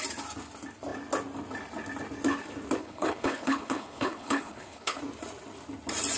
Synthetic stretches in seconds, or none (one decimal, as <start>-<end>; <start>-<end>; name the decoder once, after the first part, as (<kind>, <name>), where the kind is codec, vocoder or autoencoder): 2.8-5.0 (codec, HILCodec)